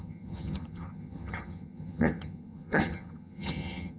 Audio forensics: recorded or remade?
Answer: remade